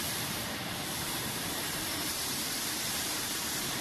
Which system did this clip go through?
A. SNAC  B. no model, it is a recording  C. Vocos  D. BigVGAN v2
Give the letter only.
D